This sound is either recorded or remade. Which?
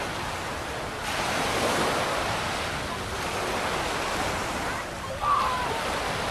recorded